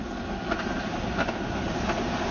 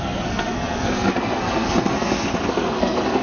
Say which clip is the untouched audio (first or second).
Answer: first